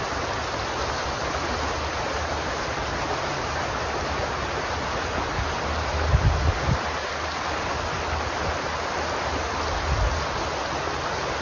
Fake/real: real